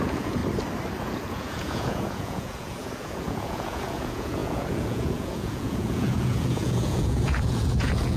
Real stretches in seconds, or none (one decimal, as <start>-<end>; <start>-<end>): 0.4-1.0